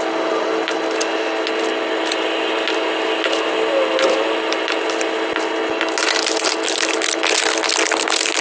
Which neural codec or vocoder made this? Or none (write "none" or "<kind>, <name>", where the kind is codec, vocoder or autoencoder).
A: none